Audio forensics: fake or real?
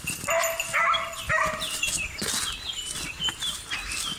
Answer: real